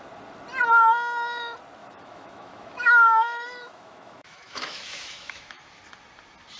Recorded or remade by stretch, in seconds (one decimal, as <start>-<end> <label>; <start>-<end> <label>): 0.0-1.8 recorded; 1.8-5.8 remade; 5.8-6.6 recorded